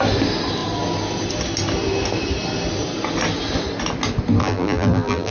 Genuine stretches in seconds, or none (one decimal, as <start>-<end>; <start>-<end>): 0.0-4.4